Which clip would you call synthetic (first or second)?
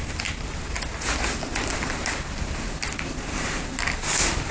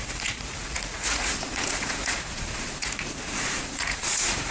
second